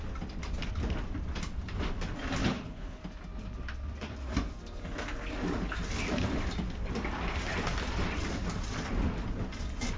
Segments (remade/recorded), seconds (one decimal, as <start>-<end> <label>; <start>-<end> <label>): 0.0-2.4 recorded; 2.4-3.0 remade; 3.0-10.0 recorded